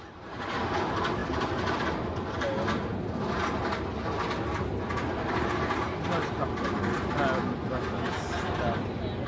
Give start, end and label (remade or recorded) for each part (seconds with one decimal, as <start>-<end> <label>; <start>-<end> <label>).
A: 0.0-9.3 recorded